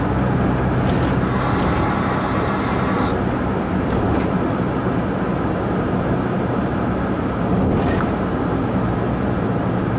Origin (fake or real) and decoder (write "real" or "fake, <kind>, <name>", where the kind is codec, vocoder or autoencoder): real